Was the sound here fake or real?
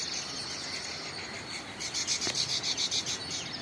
real